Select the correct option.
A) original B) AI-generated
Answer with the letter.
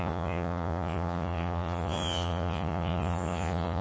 B